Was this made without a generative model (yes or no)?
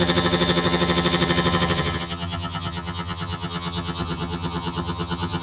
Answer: no